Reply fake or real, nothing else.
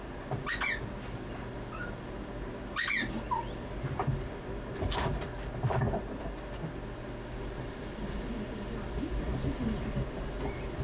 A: real